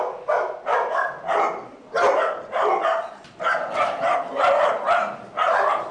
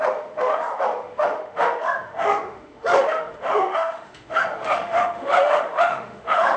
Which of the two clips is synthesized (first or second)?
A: second